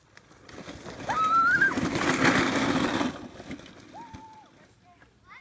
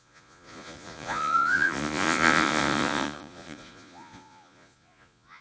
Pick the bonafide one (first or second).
first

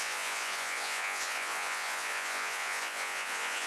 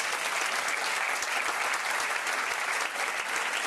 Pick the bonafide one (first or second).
second